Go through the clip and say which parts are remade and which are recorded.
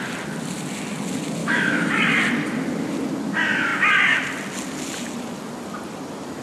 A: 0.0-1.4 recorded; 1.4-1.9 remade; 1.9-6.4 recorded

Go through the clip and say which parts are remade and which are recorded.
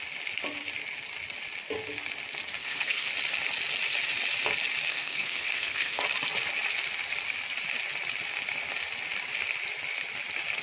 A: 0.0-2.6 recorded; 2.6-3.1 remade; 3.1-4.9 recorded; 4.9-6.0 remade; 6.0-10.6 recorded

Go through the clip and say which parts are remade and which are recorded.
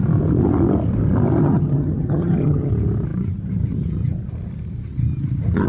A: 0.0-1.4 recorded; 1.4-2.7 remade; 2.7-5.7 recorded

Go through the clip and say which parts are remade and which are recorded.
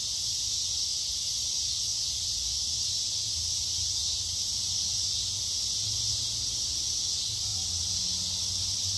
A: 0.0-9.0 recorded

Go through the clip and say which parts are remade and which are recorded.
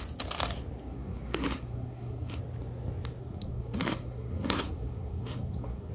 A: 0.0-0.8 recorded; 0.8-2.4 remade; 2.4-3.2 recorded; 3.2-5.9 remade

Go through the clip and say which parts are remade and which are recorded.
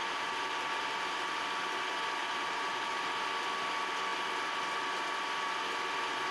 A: 0.0-0.5 remade; 0.5-2.2 recorded; 2.2-3.0 remade; 3.0-6.3 recorded